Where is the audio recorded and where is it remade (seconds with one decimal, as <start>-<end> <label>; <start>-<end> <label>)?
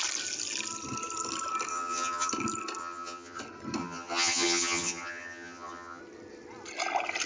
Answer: 0.0-1.7 recorded; 1.7-2.3 remade; 2.3-2.8 recorded; 2.8-3.4 remade; 3.4-3.8 recorded; 3.8-6.0 remade; 6.0-7.3 recorded